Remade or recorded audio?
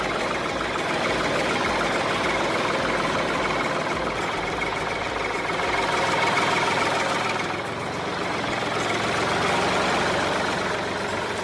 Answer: recorded